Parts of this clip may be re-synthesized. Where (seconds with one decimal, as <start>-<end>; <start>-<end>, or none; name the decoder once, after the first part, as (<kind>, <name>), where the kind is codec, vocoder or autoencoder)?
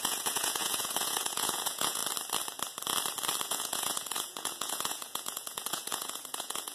0.0-2.0 (vocoder, Vocos); 3.4-6.7